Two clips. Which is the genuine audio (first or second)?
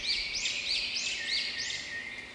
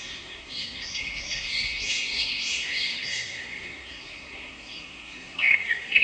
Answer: first